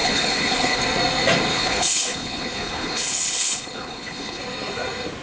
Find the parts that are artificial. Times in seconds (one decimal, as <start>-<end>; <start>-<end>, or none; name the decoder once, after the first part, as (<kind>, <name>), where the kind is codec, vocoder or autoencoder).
0.0-0.8 (codec, HILCodec); 1.5-4.4